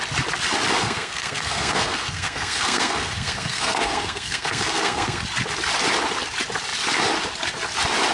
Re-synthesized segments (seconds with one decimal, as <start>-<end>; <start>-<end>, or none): 0.8-5.2